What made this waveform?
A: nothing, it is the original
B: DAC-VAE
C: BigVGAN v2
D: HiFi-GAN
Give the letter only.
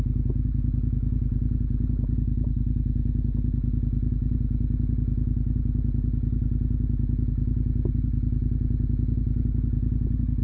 A